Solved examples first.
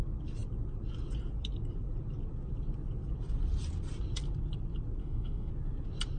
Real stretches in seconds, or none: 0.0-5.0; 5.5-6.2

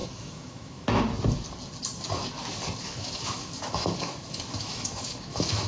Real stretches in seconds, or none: 1.0-2.8

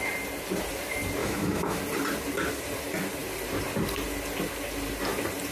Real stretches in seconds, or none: 0.0-1.2; 1.8-5.5